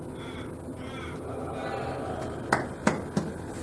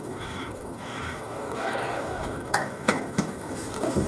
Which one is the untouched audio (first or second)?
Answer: first